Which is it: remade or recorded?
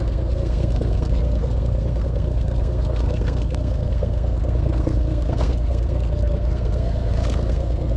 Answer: remade